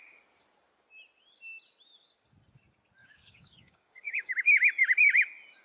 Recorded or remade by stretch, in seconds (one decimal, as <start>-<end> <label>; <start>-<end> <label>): 0.0-3.0 recorded; 3.0-4.3 remade; 4.3-5.6 recorded